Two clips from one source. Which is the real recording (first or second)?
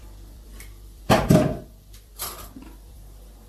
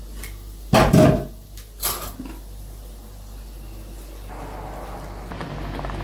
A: second